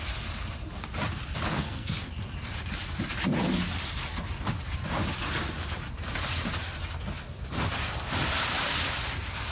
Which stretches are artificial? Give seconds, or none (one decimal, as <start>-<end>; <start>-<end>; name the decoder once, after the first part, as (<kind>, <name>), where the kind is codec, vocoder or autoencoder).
1.5-2.1 (codec, SNAC)